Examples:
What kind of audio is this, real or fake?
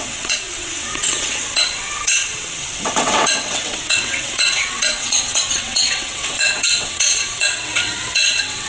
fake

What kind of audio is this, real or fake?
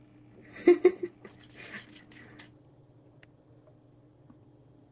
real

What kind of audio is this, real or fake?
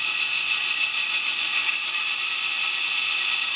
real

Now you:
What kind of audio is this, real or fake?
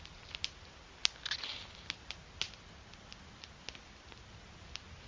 real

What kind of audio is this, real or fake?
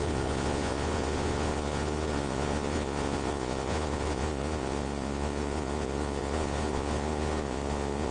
fake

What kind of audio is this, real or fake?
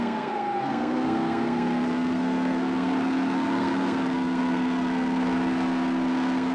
fake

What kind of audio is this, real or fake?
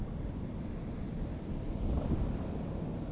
real